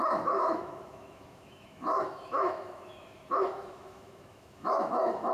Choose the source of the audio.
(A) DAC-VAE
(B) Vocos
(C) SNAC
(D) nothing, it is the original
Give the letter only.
A